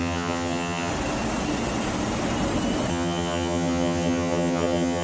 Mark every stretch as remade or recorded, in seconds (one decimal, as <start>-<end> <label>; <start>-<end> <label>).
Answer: 0.0-0.9 remade; 0.9-2.9 recorded; 2.9-5.0 remade